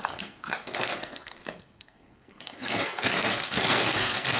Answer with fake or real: fake